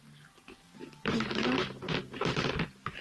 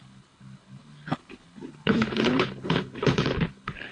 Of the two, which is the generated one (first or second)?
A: second